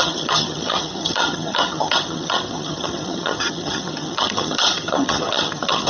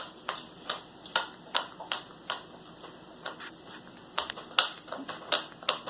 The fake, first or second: first